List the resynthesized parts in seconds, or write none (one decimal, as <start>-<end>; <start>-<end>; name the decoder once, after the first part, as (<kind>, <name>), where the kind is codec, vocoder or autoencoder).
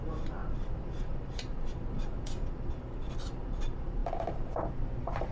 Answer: 0.0-5.3 (vocoder, BigVGAN v2)